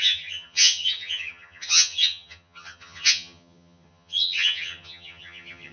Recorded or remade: remade